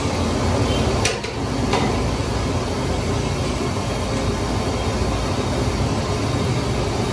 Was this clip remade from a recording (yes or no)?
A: no